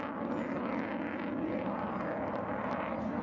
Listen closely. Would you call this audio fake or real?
real